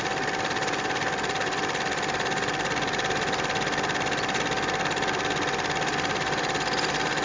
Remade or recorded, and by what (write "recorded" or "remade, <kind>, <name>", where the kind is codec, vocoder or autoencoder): recorded